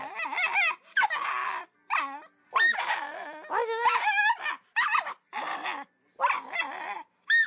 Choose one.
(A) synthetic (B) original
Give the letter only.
B